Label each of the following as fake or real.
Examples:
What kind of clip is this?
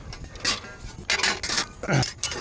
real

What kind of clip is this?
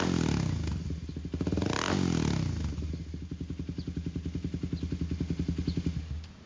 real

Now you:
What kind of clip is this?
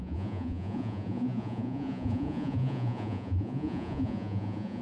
fake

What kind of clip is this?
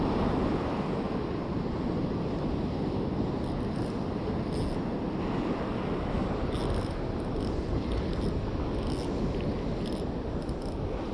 real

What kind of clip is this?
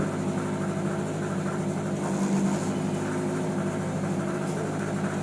real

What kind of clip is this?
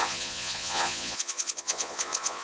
fake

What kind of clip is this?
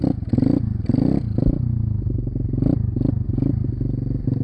real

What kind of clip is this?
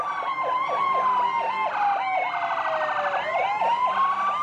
real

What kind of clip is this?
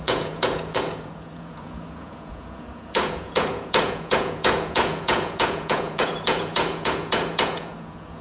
fake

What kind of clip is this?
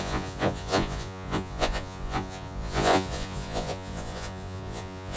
fake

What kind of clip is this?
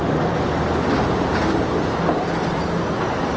real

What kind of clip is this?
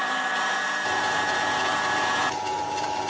fake